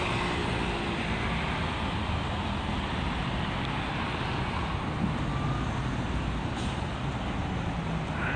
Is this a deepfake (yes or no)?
no